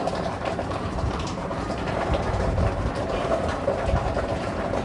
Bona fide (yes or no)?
no